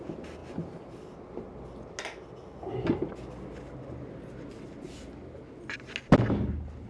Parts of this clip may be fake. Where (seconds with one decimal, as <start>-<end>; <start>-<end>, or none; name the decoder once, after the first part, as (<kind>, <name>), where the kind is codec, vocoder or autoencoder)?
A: none